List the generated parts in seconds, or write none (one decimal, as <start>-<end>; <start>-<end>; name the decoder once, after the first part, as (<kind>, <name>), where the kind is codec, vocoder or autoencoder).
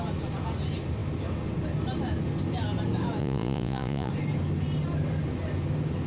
3.2-4.1 (vocoder, Vocos)